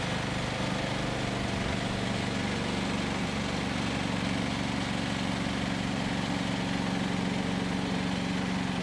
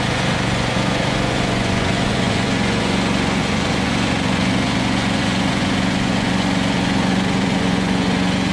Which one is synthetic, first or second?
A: second